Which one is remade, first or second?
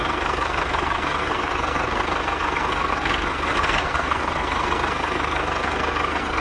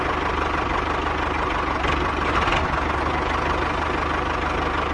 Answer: first